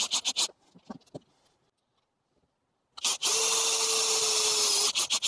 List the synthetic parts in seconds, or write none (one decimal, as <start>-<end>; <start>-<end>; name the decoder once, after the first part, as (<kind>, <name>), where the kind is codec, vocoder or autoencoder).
none